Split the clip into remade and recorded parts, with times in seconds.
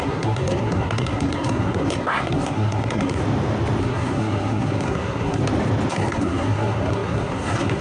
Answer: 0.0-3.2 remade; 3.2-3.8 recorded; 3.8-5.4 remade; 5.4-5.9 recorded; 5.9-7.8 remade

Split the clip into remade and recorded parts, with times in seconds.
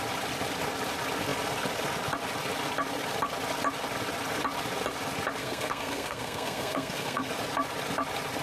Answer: 0.0-5.4 recorded; 5.4-7.3 remade; 7.3-8.4 recorded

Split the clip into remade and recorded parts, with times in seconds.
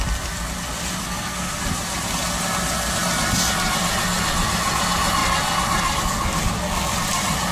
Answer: 0.0-1.0 recorded; 1.0-1.6 remade; 1.6-7.5 recorded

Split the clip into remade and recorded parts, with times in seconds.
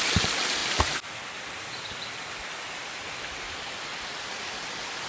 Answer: 0.0-5.1 recorded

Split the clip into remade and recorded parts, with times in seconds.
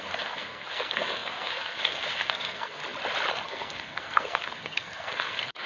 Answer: 0.0-2.8 remade; 2.8-3.3 recorded; 3.3-5.7 remade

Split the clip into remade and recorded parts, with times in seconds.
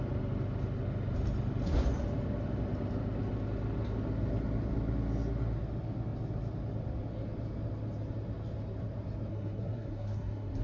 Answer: 0.0-9.3 recorded; 9.3-10.6 remade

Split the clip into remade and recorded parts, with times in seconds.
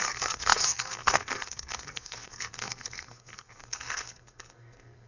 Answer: 0.0-5.1 remade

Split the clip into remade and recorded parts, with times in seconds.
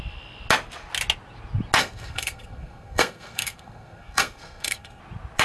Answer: 0.0-1.8 recorded; 1.8-5.0 remade; 5.0-5.4 recorded